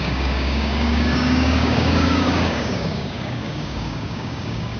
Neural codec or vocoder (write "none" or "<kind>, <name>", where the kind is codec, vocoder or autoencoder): codec, DAC